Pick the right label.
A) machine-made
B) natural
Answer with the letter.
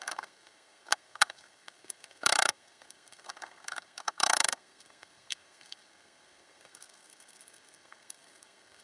A